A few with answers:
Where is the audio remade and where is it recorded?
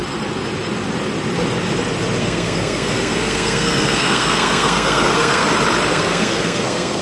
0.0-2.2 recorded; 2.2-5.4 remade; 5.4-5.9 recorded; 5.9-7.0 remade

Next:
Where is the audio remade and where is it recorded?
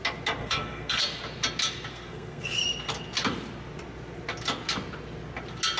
0.0-0.4 recorded; 0.4-1.0 remade; 1.0-1.9 recorded; 1.9-2.5 remade; 2.5-5.8 recorded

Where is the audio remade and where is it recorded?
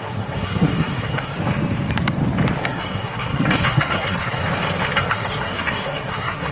0.0-1.3 remade; 1.3-2.6 recorded; 2.6-4.4 remade; 4.4-5.1 recorded; 5.1-6.5 remade